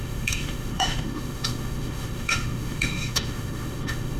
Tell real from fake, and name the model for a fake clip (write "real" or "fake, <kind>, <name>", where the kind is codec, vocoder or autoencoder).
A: fake, autoencoder, DAC-VAE